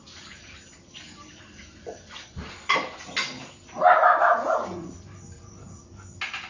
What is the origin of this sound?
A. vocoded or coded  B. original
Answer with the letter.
B